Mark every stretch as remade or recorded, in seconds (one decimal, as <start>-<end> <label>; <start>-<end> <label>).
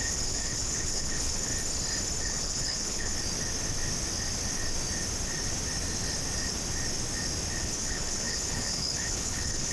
0.0-1.5 remade; 1.5-2.2 recorded; 2.2-3.1 remade; 3.1-7.6 recorded; 7.6-9.7 remade